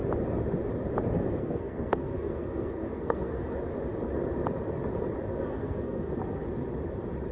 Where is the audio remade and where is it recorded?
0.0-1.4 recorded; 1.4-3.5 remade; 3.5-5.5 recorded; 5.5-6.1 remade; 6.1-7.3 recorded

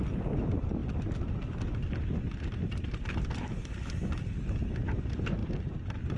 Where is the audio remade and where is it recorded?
0.0-5.4 recorded; 5.4-6.2 remade